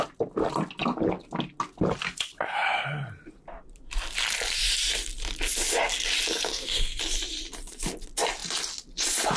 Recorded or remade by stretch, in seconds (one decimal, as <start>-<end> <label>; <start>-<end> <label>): 0.0-6.5 recorded; 6.5-7.0 remade; 7.0-9.4 recorded